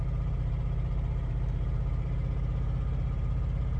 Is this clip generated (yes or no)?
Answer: yes